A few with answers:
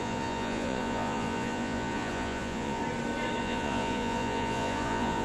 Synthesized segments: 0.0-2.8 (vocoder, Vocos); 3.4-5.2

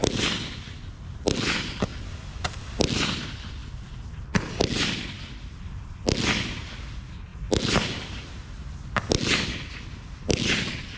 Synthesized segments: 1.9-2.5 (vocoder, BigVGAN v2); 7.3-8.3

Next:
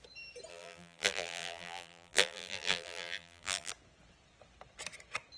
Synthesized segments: 0.5-3.7 (vocoder, BigVGAN v2)

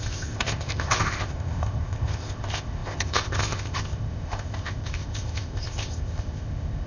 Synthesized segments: 0.0-6.9 (codec, ZipCodec)

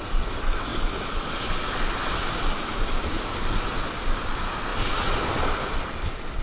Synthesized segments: none

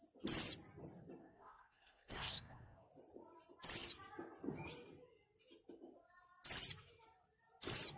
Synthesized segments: 1.2-2.9 (codec, SNAC)